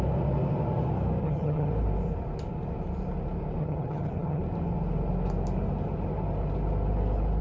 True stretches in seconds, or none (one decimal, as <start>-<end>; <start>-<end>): 0.0-1.2; 1.7-3.6; 4.4-7.4